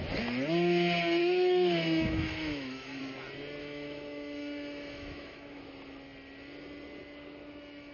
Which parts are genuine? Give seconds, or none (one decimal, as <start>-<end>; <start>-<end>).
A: 0.0-1.2; 3.0-3.6; 5.6-7.9